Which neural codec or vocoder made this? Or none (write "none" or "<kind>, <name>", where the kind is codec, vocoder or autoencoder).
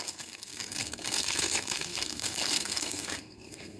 codec, SNAC